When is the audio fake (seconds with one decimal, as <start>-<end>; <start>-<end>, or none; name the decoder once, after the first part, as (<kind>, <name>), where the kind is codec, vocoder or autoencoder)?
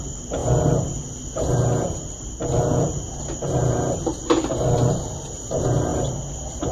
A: 0.4-2.0 (vocoder, BigVGAN v2); 5.9-6.7